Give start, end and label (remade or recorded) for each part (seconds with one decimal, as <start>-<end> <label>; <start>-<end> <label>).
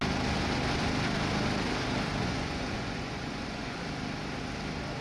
0.0-2.2 recorded; 2.2-3.8 remade; 3.8-5.0 recorded